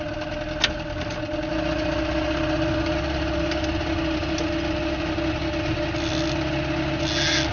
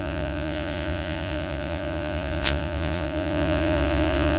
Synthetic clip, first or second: second